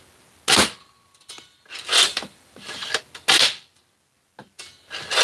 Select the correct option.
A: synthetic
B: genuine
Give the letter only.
B